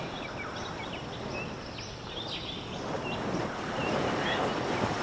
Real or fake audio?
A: real